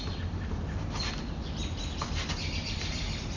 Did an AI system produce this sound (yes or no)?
no